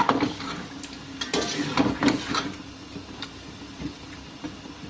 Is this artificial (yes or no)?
no